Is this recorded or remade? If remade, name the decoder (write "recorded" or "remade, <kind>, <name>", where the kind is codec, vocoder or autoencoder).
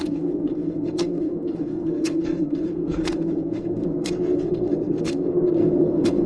remade, codec, SNAC